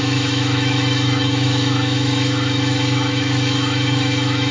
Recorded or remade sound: remade